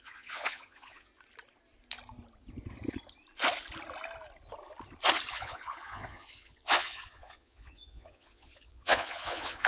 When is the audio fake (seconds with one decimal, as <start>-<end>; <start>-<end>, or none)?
0.0-1.1; 5.3-9.7